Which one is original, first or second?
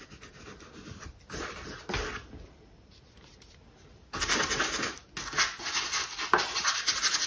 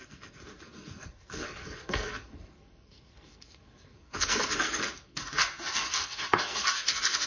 first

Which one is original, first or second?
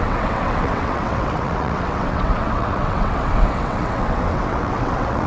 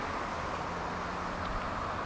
second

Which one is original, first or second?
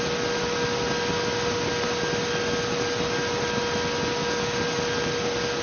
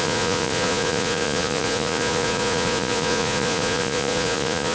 first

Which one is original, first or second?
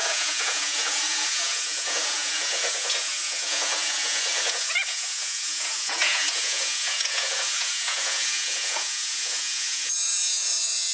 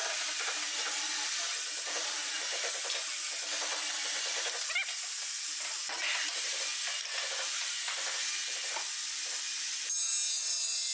second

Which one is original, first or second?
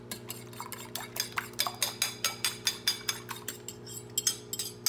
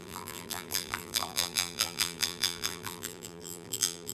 first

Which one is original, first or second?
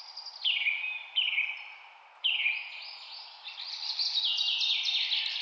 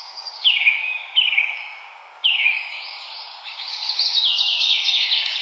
first